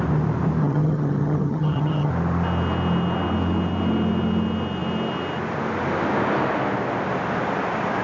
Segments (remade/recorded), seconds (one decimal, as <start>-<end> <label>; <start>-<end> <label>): 0.0-0.6 recorded; 0.6-2.1 remade; 2.1-8.0 recorded